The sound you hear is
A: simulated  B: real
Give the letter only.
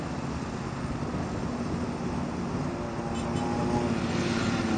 B